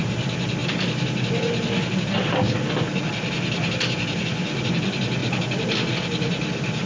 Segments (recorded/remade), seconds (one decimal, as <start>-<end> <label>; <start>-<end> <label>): 0.0-6.9 recorded